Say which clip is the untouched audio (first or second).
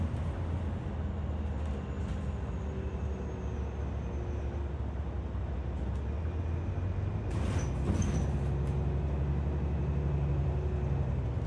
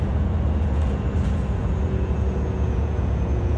first